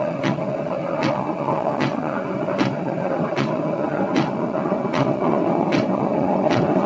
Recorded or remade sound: remade